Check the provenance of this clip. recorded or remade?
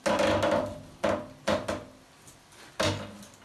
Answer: recorded